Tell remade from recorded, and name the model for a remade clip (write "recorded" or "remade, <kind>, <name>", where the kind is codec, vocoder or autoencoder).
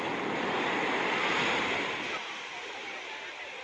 recorded